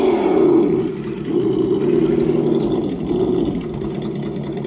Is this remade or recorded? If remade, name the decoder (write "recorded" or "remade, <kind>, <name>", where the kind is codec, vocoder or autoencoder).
recorded